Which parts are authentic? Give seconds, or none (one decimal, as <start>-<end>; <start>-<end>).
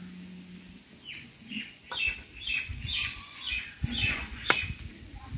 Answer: 0.0-1.0; 1.9-2.7; 4.5-5.4